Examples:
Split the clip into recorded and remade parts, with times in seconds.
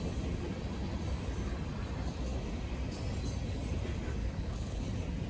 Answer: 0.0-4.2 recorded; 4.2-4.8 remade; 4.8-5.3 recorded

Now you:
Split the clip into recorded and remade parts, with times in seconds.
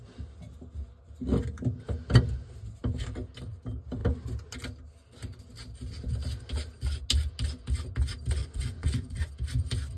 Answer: 0.0-8.4 recorded; 8.4-9.3 remade; 9.3-10.0 recorded